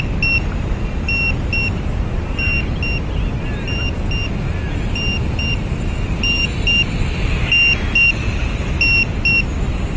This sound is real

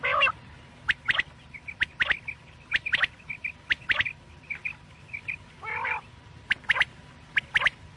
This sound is real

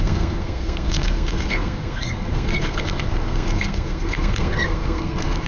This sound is fake